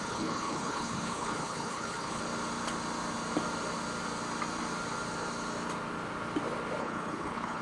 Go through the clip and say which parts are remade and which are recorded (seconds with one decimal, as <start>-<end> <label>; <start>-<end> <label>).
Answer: 0.0-2.2 remade; 2.2-6.8 recorded; 6.8-7.6 remade